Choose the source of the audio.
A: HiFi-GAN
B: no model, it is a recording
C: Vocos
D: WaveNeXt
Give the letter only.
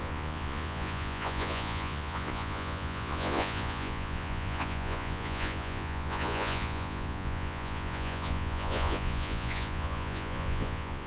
C